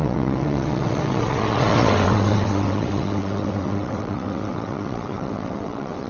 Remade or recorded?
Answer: remade